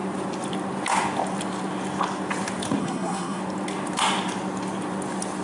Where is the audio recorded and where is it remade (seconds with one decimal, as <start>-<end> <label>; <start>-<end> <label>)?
0.0-2.8 recorded; 2.8-3.4 remade; 3.4-5.4 recorded